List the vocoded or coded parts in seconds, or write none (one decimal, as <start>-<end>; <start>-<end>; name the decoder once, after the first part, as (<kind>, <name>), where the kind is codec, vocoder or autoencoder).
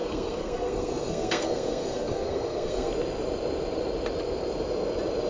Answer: 0.0-2.9 (codec, SNAC)